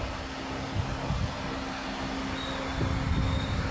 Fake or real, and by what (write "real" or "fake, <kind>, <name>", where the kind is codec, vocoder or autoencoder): real